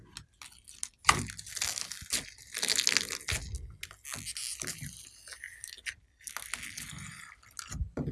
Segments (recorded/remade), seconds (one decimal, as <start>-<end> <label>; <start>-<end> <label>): 0.0-8.1 recorded